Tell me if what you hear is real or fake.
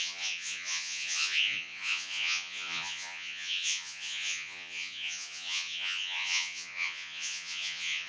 fake